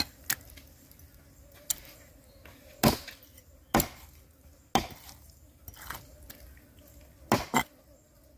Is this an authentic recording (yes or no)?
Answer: yes